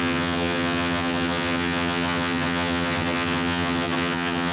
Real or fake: fake